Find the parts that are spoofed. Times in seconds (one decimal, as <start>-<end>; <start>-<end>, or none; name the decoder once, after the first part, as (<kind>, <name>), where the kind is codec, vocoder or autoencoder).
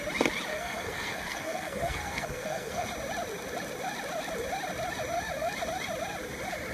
0.5-2.9 (codec, SNAC)